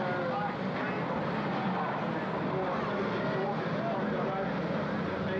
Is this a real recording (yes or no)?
yes